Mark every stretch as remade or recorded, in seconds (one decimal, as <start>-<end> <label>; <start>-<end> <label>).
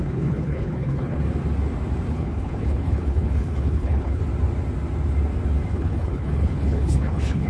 0.0-1.2 remade; 1.2-2.1 recorded; 2.1-4.2 remade; 4.2-5.7 recorded; 5.7-7.5 remade